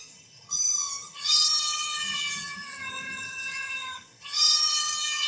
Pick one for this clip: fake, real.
fake